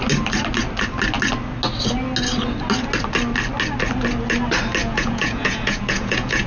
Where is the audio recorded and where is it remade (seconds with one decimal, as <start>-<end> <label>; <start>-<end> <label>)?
0.0-4.8 recorded; 4.8-6.5 remade